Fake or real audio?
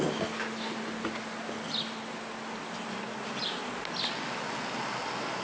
real